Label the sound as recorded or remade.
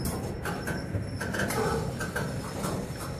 recorded